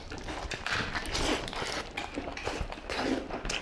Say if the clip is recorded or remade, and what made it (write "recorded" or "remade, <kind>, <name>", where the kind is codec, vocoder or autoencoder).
remade, vocoder, BigVGAN v2